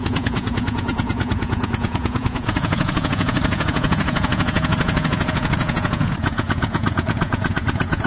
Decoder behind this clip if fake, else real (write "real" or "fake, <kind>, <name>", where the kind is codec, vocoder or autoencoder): fake, vocoder, Vocos